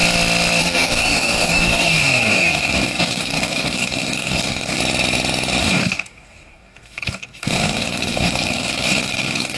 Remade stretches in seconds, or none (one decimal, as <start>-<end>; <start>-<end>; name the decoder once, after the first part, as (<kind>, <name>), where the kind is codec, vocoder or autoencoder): 0.6-4.8 (codec, DAC); 5.6-9.6